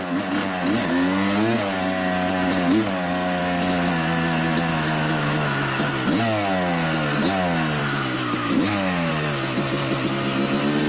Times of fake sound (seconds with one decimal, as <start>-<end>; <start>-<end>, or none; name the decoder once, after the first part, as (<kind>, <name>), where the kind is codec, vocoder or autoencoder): 3.4-3.9 (autoencoder, DAC-VAE); 4.7-5.9; 7.8-9.1